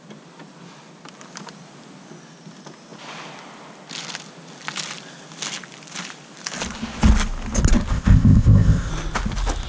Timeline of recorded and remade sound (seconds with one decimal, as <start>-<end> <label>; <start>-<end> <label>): 0.0-7.9 recorded; 7.9-8.9 remade; 8.9-9.7 recorded